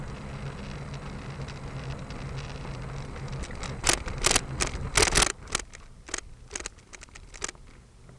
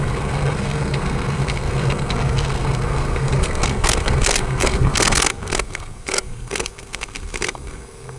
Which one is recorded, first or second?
first